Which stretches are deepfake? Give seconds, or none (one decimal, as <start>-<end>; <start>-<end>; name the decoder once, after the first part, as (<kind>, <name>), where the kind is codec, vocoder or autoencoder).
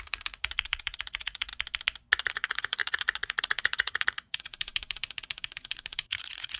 0.0-1.5 (vocoder, Vocos); 2.3-6.6